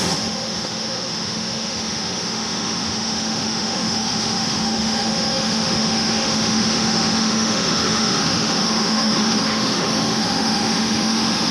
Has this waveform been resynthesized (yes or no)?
yes